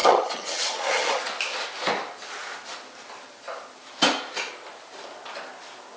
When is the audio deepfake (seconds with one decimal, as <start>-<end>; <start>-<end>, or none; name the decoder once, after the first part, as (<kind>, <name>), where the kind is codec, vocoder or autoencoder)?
0.0-1.2 (vocoder, HiFi-GAN)